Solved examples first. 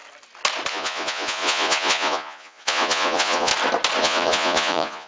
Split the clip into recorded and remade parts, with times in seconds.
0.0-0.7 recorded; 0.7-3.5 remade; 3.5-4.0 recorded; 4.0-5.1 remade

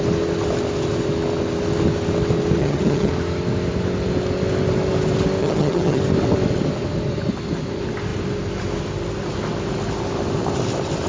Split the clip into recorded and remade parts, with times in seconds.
0.0-2.6 recorded; 2.6-3.1 remade; 3.1-5.4 recorded; 5.4-6.0 remade; 6.0-11.1 recorded

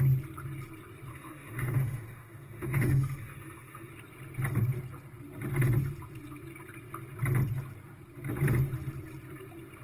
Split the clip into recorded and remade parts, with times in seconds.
0.0-1.1 recorded; 1.1-3.9 remade; 3.9-9.8 recorded

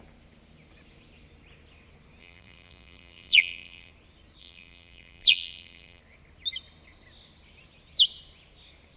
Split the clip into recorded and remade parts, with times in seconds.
0.0-2.2 recorded; 2.2-3.9 remade; 3.9-4.4 recorded; 4.4-6.0 remade; 6.0-9.0 recorded

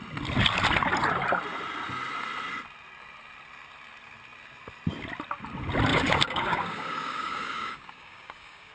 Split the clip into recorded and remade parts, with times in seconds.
0.0-5.9 recorded; 5.9-8.7 remade

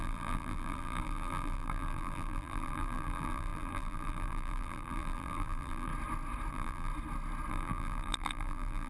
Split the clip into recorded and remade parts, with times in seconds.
0.0-5.9 remade; 5.9-6.5 recorded; 6.5-6.9 remade; 6.9-7.5 recorded; 7.5-8.9 remade

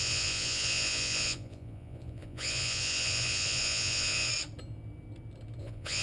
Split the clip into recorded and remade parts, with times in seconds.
0.0-4.3 remade; 4.3-5.6 recorded; 5.6-6.0 remade